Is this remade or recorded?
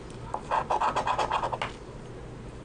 recorded